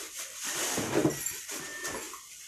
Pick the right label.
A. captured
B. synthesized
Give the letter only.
B